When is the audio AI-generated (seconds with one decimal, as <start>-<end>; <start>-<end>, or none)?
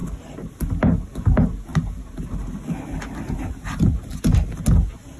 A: 0.0-0.6